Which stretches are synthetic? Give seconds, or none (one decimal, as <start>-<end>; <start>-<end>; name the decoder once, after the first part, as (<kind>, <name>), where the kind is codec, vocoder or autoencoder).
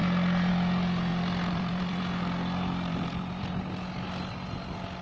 1.1-2.0 (vocoder, BigVGAN v2); 2.9-3.6